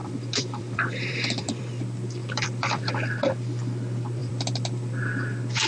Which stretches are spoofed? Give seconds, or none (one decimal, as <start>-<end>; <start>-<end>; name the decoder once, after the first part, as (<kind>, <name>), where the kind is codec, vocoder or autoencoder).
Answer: 0.0-1.8 (vocoder, BigVGAN v2); 2.2-2.8; 4.2-5.0